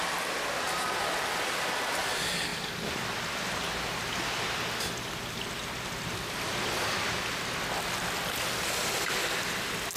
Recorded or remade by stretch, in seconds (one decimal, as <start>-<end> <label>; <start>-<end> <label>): 0.0-10.0 recorded